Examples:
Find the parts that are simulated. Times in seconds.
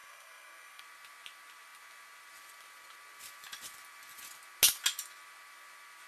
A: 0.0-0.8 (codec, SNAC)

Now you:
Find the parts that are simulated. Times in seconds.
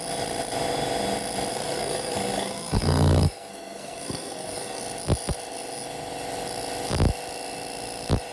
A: 1.5-4.8 (codec, SNAC)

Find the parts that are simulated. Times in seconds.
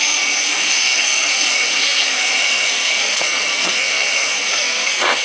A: 0.0-5.2 (codec, SNAC)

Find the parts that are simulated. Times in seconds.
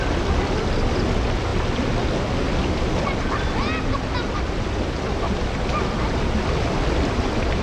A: none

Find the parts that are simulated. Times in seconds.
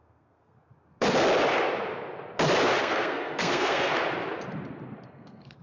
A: 0.0-0.6 (codec, SNAC); 2.8-3.9; 5.1-5.6